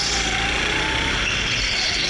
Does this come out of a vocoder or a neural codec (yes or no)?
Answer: no